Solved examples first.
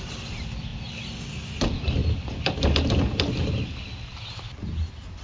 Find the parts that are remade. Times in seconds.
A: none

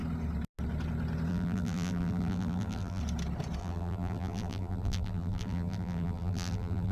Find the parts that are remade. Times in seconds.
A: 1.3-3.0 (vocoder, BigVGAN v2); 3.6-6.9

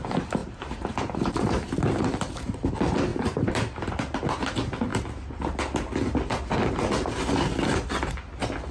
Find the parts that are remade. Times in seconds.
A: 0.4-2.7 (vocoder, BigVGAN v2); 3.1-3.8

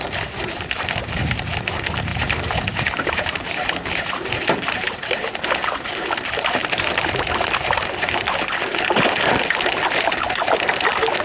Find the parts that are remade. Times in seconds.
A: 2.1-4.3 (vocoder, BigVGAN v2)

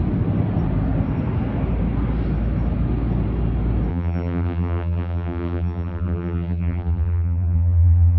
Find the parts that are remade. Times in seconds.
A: 3.9-8.2 (vocoder, BigVGAN v2)